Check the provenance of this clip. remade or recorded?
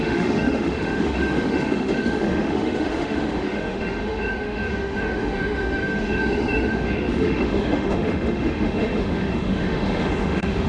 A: remade